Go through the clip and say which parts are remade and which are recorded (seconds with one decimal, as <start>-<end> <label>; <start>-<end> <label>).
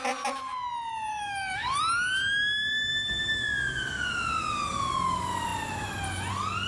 0.0-1.1 recorded; 1.1-1.8 remade; 1.8-6.7 recorded